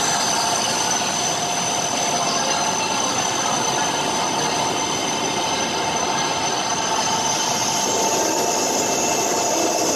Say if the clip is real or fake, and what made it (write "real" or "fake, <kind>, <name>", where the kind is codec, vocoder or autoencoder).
real